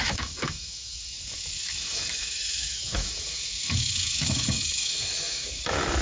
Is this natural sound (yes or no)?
no